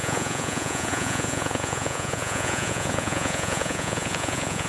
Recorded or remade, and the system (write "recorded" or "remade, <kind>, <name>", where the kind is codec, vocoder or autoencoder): remade, vocoder, Vocos